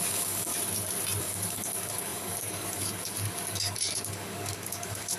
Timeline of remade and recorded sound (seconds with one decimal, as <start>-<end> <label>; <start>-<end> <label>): 0.0-0.5 remade; 0.5-1.2 recorded; 1.2-5.2 remade